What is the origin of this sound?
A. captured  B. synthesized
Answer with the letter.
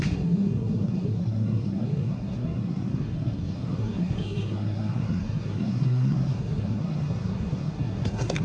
B